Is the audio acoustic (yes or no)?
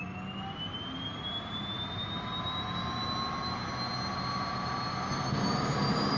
yes